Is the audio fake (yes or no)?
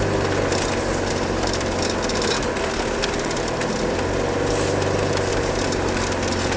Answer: no